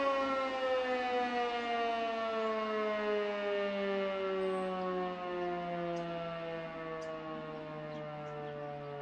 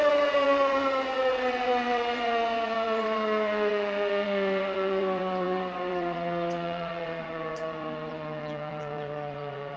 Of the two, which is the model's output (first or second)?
second